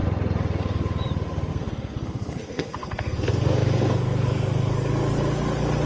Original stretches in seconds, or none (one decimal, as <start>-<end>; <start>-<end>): 0.0-1.5; 4.7-5.9